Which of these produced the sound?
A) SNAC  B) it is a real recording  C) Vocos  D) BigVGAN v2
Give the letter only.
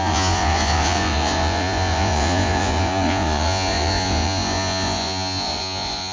C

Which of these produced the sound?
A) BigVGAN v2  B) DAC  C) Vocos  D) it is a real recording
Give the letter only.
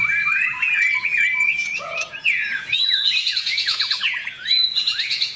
C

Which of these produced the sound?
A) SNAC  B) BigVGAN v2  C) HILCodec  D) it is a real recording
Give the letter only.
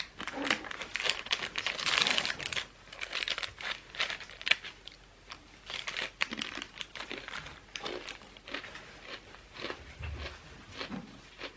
D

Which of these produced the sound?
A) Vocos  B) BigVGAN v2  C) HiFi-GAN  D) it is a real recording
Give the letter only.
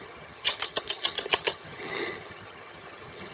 C